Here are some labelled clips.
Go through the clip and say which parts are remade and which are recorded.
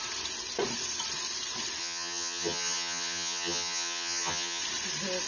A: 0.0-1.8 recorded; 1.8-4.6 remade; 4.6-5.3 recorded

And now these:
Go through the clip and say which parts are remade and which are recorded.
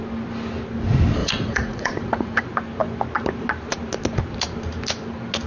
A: 0.0-1.2 recorded; 1.2-2.4 remade; 2.4-5.5 recorded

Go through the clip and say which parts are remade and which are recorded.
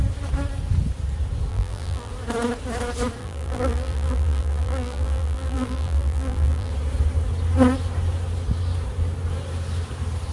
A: 0.0-1.5 recorded; 1.5-2.1 remade; 2.1-3.2 recorded; 3.2-6.7 remade; 6.7-10.3 recorded